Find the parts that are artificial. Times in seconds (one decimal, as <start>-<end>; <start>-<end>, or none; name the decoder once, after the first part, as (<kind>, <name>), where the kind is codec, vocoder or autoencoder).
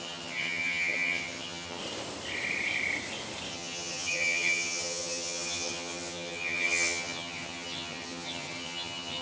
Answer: 0.0-1.8 (vocoder, HiFi-GAN); 3.5-9.2